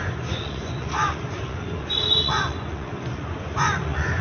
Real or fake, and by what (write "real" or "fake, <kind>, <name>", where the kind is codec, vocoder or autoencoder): fake, vocoder, Vocos